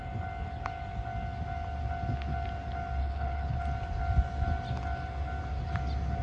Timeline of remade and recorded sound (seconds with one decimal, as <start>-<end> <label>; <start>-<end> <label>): 0.0-3.0 recorded; 3.0-3.6 remade; 3.6-6.2 recorded